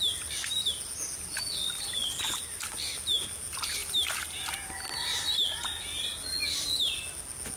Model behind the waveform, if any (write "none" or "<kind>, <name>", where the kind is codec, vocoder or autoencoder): none